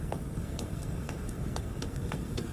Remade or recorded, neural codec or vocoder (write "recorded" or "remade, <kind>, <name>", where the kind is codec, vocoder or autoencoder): remade, codec, SNAC